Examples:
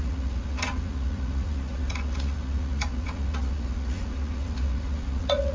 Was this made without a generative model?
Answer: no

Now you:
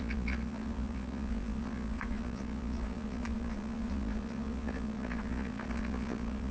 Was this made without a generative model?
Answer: no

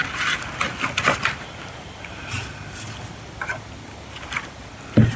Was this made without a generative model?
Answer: yes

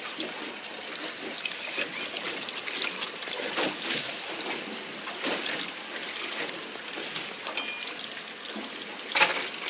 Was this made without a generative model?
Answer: yes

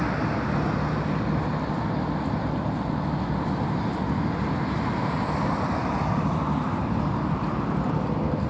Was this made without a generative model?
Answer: yes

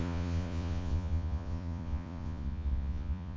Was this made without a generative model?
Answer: no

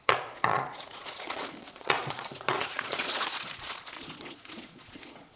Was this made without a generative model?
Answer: no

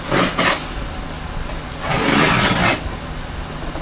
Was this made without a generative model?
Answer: yes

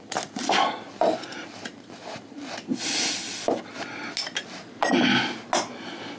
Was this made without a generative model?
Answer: yes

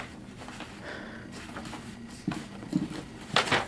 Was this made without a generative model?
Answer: yes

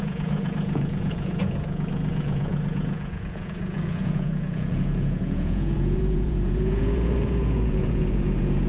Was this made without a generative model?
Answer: no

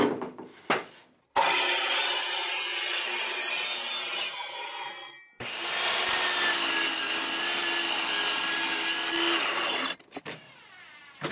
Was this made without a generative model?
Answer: yes